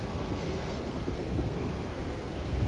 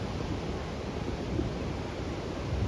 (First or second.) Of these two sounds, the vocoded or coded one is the first